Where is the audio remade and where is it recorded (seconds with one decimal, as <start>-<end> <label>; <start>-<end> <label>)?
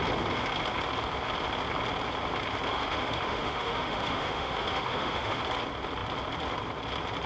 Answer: 0.0-2.7 recorded; 2.7-5.4 remade; 5.4-7.3 recorded